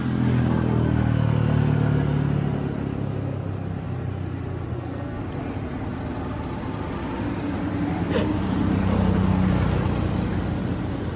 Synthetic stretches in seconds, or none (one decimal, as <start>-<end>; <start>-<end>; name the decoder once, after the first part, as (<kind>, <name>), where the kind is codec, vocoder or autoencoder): 4.7-5.2 (codec, SNAC)